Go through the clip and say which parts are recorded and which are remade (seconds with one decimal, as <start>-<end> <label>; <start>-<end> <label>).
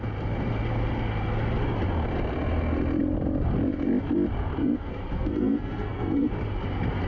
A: 0.0-4.6 recorded; 4.6-6.3 remade; 6.3-7.1 recorded